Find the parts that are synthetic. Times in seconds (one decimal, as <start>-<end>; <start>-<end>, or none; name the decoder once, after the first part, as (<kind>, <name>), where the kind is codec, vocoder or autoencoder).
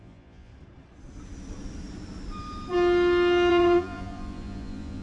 0.0-0.5 (vocoder, Vocos); 3.5-5.0